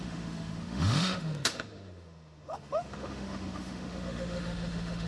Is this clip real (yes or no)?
no